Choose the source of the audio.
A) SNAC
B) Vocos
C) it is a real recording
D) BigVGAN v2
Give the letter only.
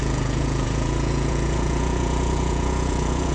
B